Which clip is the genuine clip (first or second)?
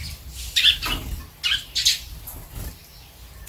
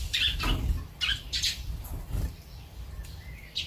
first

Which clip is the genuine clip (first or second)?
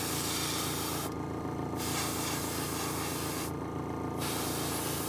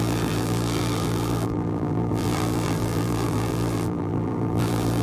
first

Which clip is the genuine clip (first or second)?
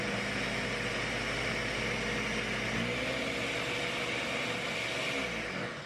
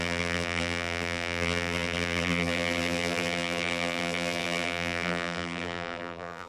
first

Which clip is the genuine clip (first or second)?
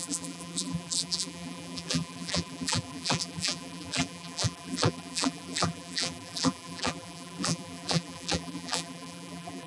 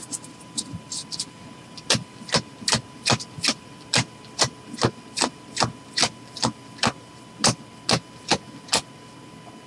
second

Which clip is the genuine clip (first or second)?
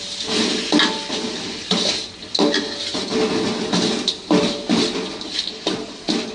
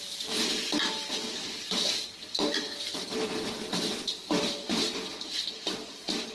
first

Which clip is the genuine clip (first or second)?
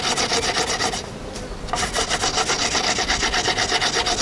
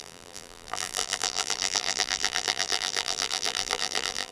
first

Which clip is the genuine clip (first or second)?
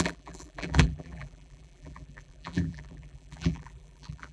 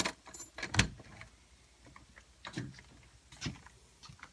second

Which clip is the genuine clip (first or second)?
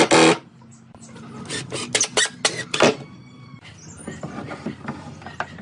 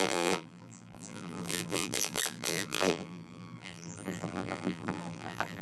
first